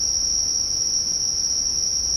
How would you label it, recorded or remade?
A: recorded